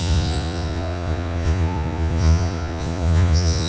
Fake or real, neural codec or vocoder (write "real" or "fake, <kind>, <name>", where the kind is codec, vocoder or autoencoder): fake, vocoder, Vocos